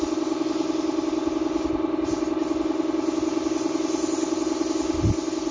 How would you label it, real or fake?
real